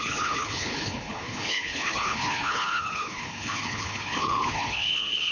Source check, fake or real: fake